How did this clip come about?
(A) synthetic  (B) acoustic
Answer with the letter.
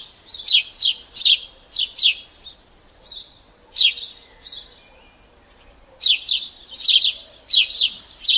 B